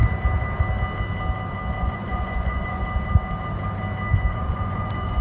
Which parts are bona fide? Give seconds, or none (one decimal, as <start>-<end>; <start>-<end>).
0.0-1.8; 2.8-4.3